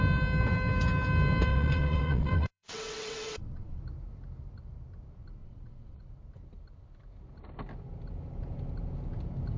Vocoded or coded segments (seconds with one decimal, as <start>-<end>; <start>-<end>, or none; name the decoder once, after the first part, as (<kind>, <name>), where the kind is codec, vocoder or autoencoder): 1.5-3.8 (vocoder, WaveNeXt); 5.4-6.0